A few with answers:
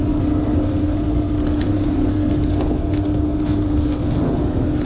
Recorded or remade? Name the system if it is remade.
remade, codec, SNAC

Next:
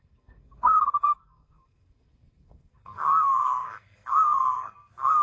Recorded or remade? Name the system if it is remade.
remade, codec, SNAC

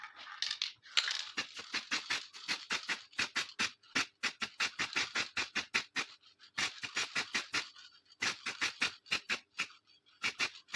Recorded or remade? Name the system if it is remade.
recorded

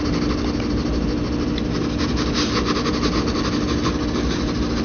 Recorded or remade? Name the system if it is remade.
recorded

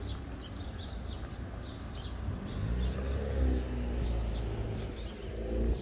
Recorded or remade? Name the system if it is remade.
recorded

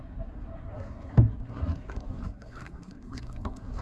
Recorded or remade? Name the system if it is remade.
remade, codec, SNAC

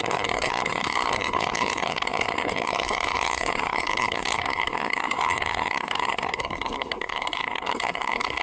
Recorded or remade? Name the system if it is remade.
remade, codec, SNAC